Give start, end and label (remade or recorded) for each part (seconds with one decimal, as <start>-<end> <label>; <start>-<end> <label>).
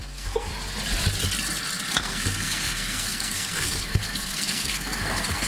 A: 0.0-0.5 remade; 0.5-1.9 recorded; 1.9-5.5 remade